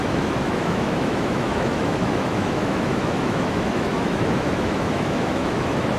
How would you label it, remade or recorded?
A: remade